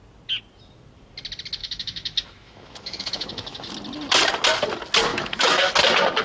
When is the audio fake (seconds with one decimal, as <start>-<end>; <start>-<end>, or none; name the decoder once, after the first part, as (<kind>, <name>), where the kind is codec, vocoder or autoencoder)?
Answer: 1.6-3.7 (autoencoder, DAC-VAE); 5.1-5.7